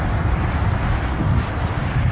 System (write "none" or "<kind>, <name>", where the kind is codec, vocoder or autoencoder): none